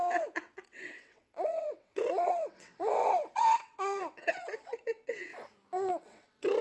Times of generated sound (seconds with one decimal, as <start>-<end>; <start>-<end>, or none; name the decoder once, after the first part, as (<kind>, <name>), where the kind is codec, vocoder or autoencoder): 0.0-5.3 (vocoder, WaveNeXt); 5.9-6.6